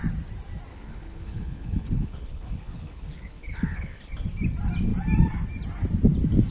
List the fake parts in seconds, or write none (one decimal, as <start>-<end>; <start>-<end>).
0.7-4.1